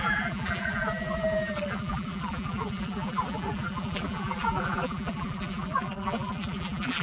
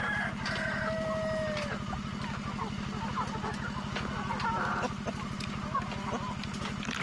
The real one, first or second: second